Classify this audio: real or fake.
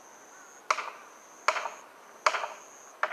real